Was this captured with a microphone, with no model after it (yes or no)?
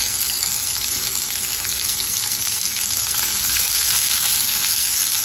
no